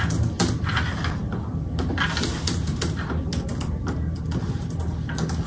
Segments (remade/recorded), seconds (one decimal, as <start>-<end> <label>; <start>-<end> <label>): 0.0-5.5 recorded